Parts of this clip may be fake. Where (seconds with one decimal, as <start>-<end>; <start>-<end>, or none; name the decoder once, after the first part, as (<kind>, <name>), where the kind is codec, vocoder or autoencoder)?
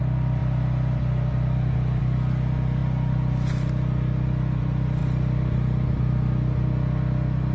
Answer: none